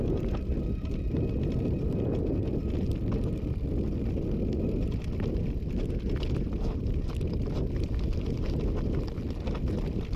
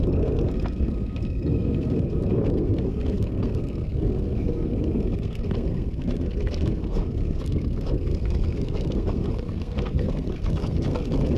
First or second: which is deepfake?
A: second